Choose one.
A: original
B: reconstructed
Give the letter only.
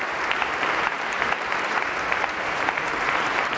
B